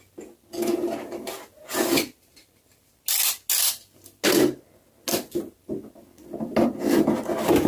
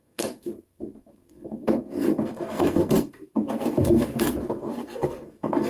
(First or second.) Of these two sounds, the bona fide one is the first